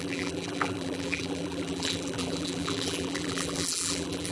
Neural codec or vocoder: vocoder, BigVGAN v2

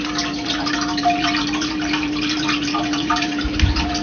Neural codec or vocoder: vocoder, BigVGAN v2